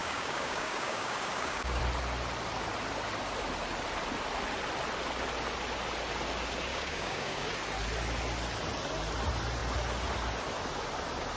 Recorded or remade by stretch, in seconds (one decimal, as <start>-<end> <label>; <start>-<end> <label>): 0.0-1.8 remade; 1.8-6.7 recorded; 6.7-7.5 remade; 7.5-11.4 recorded

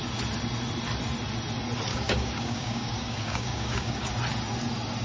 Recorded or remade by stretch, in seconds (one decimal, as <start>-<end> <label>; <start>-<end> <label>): 0.0-1.9 recorded; 1.9-4.1 remade; 4.1-5.0 recorded

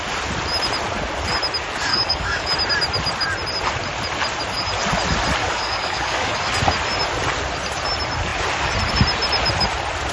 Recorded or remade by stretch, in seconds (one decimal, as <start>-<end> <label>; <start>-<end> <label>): 0.0-1.9 recorded; 1.9-2.5 remade; 2.5-5.4 recorded; 5.4-6.5 remade; 6.5-10.1 recorded

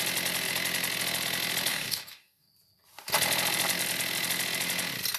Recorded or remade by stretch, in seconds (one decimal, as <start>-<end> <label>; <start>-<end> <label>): 0.0-1.7 recorded; 1.7-2.5 remade; 2.5-5.2 recorded

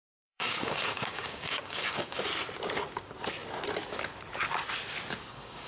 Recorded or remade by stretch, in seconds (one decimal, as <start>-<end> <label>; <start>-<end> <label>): 0.0-2.3 remade; 2.3-5.3 recorded; 5.3-5.7 remade

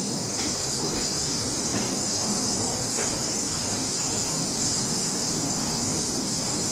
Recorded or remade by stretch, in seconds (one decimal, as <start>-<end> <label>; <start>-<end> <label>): 0.0-6.7 remade

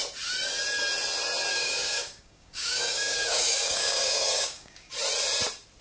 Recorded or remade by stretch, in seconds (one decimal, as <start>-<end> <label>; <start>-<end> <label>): 0.0-1.5 recorded; 1.5-4.9 remade; 4.9-5.8 recorded